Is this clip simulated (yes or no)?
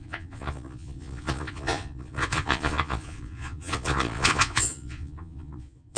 yes